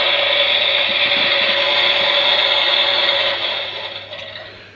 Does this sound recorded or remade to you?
recorded